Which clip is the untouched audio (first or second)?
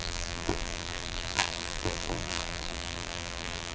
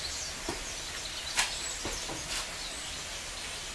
second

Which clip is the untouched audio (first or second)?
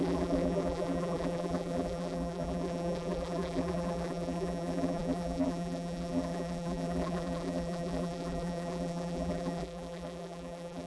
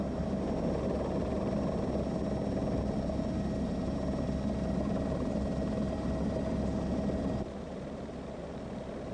second